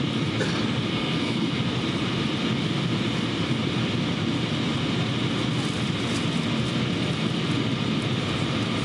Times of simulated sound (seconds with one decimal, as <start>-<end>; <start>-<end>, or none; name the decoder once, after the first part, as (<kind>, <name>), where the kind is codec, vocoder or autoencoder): 0.9-1.6 (codec, SNAC)